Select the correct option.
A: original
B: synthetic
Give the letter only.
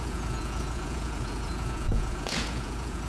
B